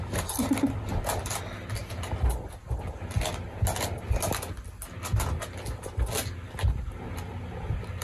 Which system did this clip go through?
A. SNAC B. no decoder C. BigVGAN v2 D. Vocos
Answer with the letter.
B